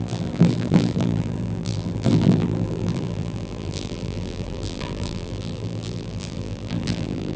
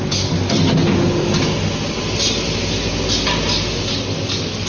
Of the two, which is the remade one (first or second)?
first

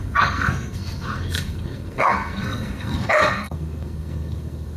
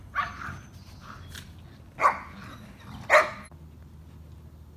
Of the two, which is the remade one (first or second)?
first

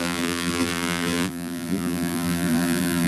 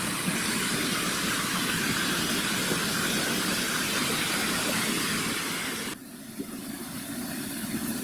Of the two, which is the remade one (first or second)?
first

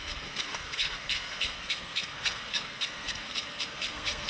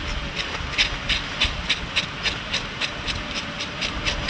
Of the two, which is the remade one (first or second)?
first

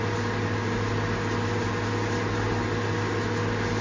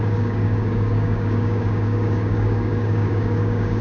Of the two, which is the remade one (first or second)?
second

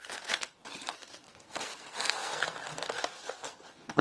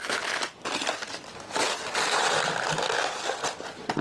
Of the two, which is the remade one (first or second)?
first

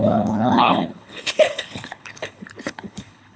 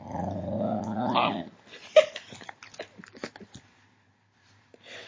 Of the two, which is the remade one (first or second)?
first